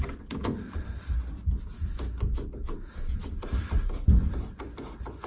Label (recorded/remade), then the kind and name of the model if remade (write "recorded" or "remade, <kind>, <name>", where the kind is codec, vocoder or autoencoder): recorded